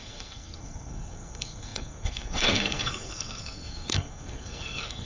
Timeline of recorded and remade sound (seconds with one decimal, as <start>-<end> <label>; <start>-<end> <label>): 0.0-5.1 remade